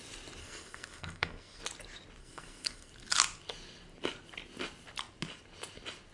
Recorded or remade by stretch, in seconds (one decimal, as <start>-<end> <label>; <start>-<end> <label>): 0.0-0.4 recorded; 0.4-1.6 remade; 1.6-2.2 recorded; 2.2-2.9 remade; 2.9-6.1 recorded